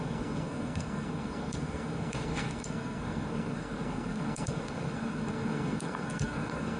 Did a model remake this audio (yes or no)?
yes